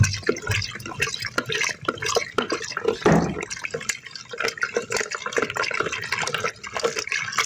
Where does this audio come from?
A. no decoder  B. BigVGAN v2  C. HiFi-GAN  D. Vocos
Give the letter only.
A